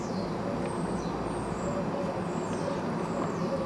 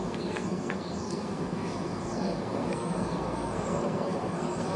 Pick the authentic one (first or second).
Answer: first